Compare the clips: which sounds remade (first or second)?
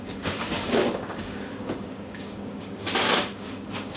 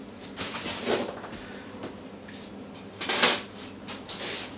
first